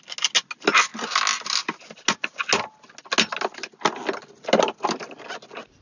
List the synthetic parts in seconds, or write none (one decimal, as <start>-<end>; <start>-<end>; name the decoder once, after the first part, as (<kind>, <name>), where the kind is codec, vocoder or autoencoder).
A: none